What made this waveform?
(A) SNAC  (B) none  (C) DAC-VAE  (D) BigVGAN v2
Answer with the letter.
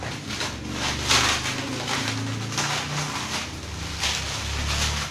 B